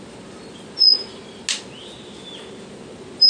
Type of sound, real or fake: real